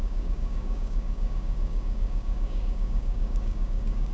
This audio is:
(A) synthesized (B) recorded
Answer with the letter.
A